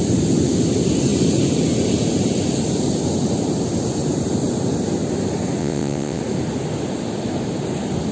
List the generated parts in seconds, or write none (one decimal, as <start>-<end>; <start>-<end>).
5.6-6.2